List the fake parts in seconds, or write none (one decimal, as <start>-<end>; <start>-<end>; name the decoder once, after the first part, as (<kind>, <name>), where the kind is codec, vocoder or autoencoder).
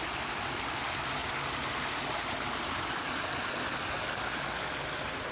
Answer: none